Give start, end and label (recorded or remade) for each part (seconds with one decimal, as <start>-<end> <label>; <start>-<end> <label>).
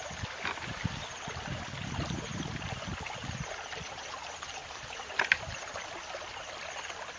0.0-7.2 recorded